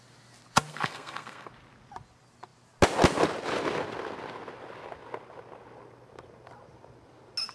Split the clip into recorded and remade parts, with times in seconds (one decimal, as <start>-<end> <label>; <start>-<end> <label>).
0.0-0.7 recorded; 0.7-1.5 remade; 1.5-7.5 recorded